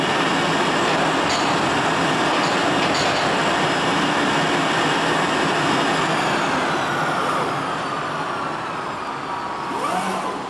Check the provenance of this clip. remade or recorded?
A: recorded